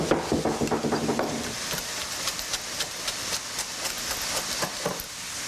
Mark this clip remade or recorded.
recorded